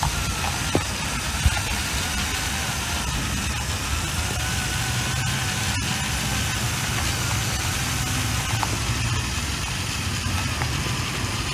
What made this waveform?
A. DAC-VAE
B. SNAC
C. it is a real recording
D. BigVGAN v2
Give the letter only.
C